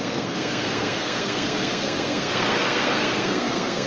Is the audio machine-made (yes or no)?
yes